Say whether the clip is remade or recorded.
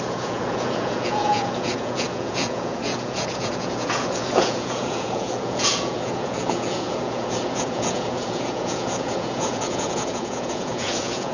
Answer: remade